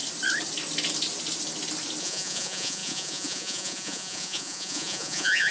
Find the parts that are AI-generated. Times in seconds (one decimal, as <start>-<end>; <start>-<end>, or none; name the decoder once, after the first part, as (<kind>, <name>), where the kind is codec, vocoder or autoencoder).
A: 2.0-5.5 (vocoder, Vocos)